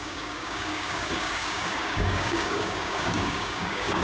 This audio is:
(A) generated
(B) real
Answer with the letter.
A